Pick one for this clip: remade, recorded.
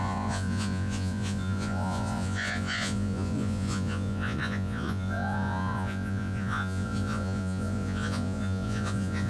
remade